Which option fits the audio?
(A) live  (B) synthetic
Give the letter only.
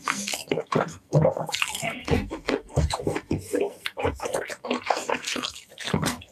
B